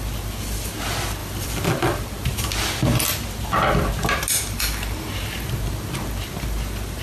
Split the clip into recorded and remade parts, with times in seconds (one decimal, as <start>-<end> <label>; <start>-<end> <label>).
0.0-1.2 recorded; 1.2-1.7 remade; 1.7-7.0 recorded